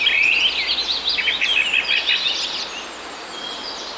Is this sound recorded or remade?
recorded